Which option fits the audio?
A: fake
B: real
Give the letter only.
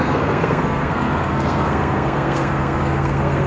A